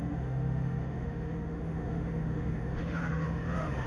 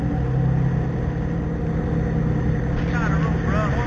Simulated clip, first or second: first